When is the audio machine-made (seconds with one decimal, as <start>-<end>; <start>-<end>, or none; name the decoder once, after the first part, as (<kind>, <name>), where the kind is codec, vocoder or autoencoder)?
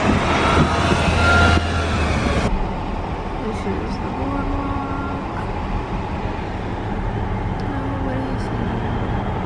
none